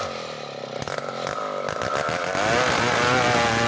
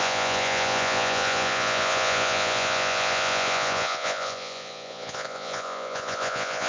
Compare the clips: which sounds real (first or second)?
first